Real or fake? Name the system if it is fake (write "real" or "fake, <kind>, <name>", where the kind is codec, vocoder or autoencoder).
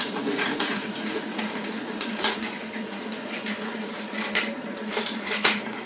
fake, vocoder, Vocos